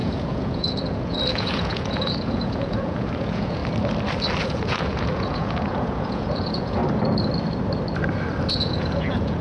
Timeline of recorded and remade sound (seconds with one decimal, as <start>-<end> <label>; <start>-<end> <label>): 0.0-3.6 remade; 3.6-4.4 recorded; 4.4-6.8 remade; 6.8-8.5 recorded; 8.5-9.4 remade